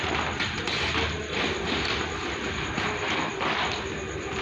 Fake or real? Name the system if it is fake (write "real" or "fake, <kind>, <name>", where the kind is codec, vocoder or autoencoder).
real